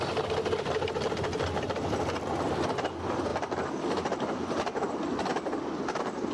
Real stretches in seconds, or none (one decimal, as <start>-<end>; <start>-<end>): 0.0-6.3